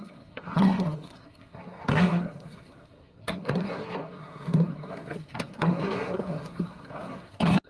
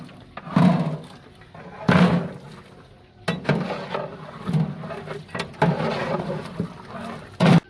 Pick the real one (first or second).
second